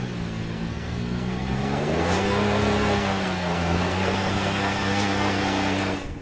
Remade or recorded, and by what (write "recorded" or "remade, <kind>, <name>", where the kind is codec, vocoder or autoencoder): remade, codec, SNAC